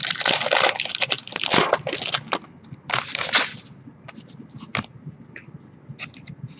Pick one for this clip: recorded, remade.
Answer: recorded